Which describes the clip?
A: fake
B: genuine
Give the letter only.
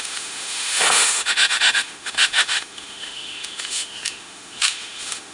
A